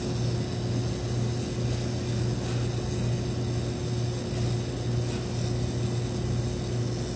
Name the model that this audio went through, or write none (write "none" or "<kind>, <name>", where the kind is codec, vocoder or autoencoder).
none